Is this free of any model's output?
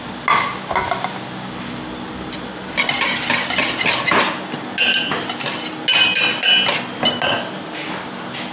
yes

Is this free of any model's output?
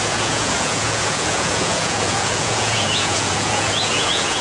no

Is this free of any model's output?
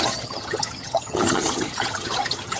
no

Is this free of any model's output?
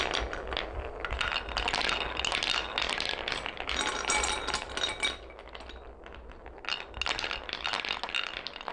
yes